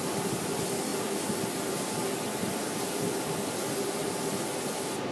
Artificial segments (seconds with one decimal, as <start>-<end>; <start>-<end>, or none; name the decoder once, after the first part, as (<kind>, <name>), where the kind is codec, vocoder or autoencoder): none